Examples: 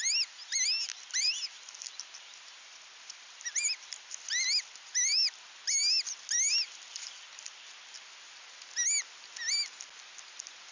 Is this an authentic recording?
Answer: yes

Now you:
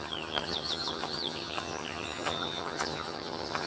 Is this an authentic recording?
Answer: no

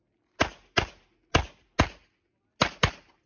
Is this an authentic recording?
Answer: yes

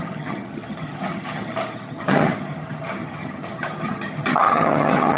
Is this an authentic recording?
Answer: no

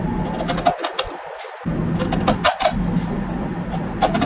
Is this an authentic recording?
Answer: yes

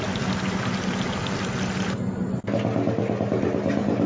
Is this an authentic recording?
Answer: yes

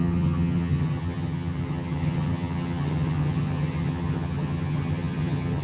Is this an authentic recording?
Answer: no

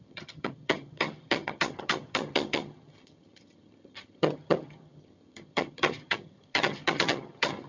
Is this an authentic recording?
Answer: no